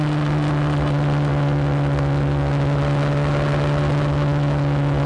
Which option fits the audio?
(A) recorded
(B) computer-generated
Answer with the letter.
A